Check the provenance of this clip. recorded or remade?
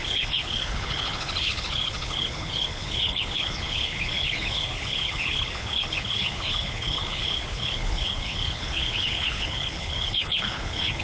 remade